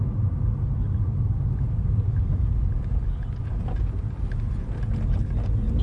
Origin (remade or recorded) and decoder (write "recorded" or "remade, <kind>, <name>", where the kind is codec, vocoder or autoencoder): recorded